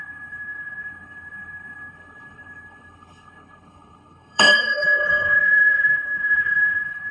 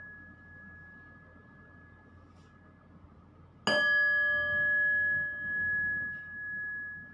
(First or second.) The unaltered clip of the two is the second